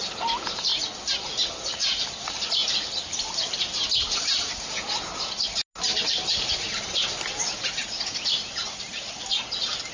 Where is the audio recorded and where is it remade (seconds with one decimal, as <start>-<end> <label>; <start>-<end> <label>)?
0.0-2.6 recorded; 2.6-4.5 remade; 4.5-5.9 recorded; 5.9-6.8 remade; 6.8-7.8 recorded; 7.8-8.9 remade; 8.9-9.9 recorded